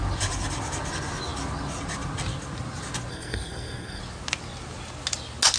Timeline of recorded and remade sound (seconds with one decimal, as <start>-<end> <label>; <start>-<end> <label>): 0.0-3.1 recorded; 3.1-4.0 remade; 4.0-5.6 recorded